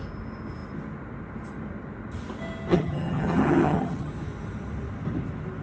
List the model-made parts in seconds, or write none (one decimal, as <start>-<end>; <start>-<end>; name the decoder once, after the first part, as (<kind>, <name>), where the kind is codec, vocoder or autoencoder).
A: 2.7-4.1 (vocoder, HiFi-GAN)